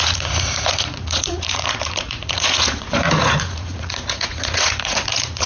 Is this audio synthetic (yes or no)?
yes